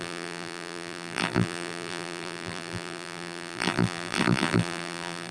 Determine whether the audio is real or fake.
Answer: fake